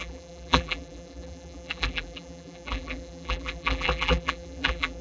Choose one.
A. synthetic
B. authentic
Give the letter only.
A